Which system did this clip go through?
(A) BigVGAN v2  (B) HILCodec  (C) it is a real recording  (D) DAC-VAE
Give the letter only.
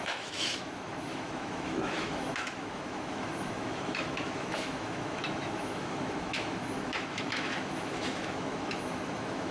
D